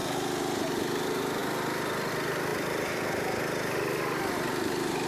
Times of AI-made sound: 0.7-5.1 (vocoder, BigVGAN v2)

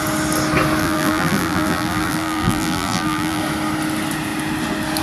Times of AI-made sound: 0.8-3.4 (vocoder, BigVGAN v2)

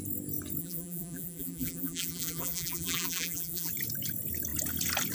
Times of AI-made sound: 0.6-3.7 (vocoder, BigVGAN v2)

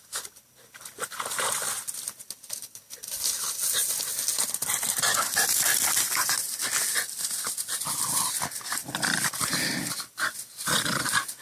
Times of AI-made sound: 3.8-5.2 (vocoder, BigVGAN v2); 8.8-9.5